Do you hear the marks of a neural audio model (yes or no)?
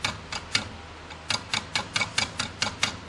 no